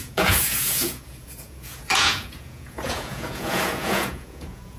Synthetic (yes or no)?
yes